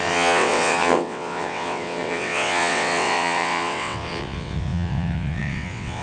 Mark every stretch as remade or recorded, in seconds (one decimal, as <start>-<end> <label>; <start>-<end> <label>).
0.0-6.0 remade